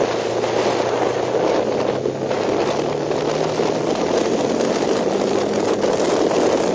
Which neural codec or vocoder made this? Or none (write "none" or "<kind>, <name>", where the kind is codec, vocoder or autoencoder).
none